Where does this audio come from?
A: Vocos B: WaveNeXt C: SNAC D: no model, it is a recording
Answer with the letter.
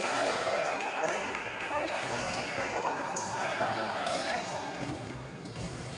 C